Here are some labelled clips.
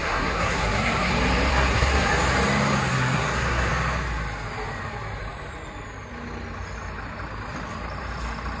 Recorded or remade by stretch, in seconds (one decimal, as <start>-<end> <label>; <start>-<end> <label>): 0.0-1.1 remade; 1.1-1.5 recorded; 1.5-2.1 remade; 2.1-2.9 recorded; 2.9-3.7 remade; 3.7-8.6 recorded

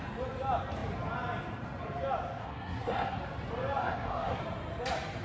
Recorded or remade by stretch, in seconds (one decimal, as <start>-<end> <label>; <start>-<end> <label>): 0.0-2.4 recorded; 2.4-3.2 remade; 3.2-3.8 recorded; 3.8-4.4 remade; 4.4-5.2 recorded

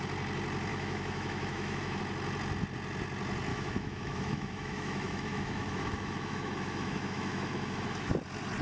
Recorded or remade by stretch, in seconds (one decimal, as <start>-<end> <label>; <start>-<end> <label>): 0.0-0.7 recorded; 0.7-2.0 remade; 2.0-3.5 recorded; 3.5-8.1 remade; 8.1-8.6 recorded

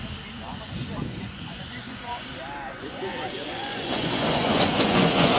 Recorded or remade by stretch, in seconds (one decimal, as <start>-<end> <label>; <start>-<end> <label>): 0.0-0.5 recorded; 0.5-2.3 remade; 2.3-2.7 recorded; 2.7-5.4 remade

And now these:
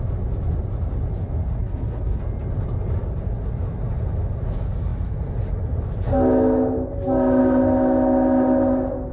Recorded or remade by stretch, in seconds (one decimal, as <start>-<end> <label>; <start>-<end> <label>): 0.0-1.6 recorded; 1.6-2.2 remade; 2.2-9.1 recorded

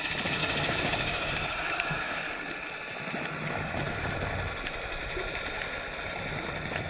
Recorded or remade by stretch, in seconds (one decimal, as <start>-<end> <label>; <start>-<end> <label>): 0.0-0.4 recorded; 0.4-2.2 remade; 2.2-6.9 recorded